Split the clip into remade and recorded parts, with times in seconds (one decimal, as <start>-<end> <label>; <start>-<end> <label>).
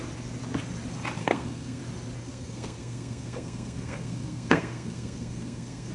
0.0-1.2 recorded; 1.2-1.8 remade; 1.8-2.2 recorded; 2.2-5.9 remade